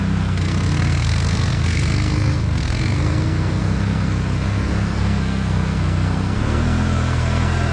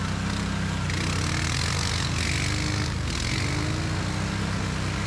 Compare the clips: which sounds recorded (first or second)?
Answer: second